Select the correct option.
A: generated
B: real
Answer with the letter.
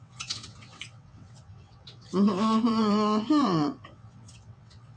A